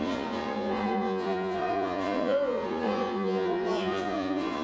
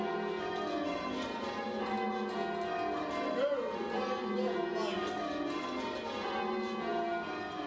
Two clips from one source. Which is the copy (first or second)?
first